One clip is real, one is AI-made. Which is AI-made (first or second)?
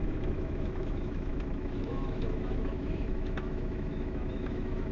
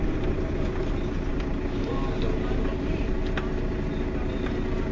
first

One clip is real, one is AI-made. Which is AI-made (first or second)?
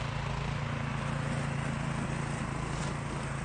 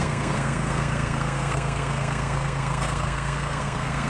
second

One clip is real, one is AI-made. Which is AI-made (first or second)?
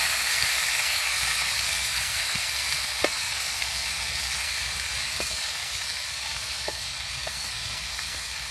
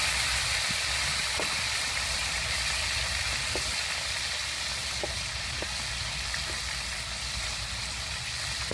first